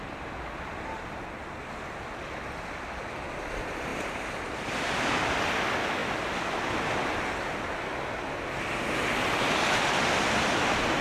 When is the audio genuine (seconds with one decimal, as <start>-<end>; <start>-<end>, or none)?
0.0-11.0